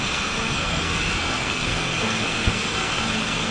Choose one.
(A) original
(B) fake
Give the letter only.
B